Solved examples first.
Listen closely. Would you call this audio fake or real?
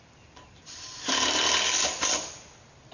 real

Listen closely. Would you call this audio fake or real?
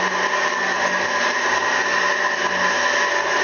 real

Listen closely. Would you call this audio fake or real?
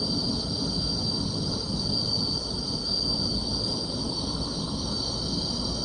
real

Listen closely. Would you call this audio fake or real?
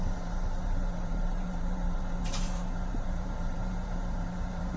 fake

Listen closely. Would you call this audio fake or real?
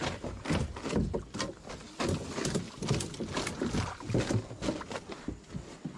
real